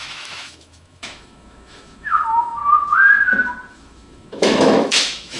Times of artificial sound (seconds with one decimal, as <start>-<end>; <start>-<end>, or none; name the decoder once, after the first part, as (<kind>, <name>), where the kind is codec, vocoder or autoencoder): 0.0-2.6 (autoencoder, DAC-VAE); 3.7-5.4